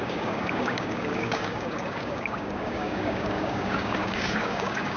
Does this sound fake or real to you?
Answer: fake